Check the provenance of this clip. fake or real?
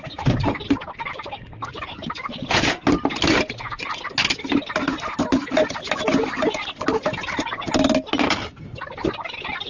real